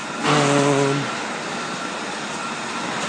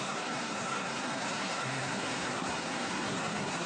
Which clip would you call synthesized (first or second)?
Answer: second